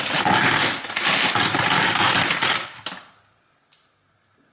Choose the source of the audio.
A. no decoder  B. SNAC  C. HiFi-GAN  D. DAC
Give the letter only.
A